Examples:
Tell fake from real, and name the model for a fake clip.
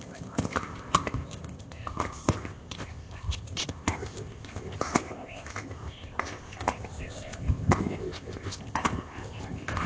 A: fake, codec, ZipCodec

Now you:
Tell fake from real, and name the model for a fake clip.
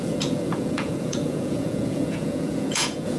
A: fake, vocoder, Vocos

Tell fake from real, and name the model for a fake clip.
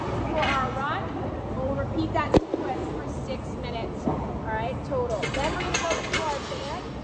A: real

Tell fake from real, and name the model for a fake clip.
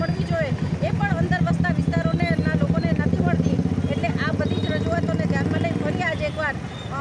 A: real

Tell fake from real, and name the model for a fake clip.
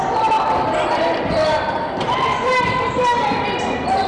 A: real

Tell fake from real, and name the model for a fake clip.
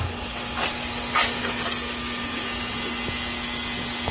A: real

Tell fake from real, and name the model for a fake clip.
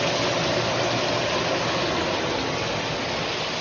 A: real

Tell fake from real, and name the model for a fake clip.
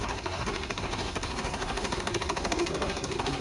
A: fake, codec, SNAC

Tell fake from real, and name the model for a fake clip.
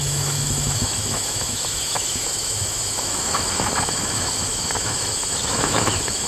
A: fake, autoencoder, DAC-VAE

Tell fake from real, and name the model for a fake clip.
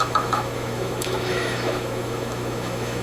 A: fake, autoencoder, DAC-VAE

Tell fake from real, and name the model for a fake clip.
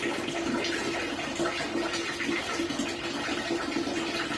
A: real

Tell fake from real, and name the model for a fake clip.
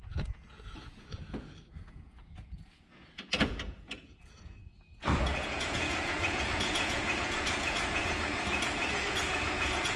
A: fake, vocoder, Vocos